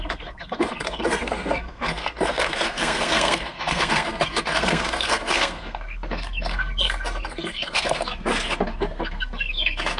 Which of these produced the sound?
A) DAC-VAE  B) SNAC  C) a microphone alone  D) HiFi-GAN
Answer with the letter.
B